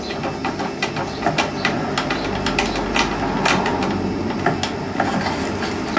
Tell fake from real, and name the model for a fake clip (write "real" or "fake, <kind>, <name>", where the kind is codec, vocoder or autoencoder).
real